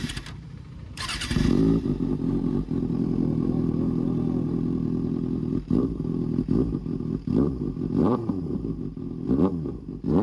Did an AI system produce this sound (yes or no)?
yes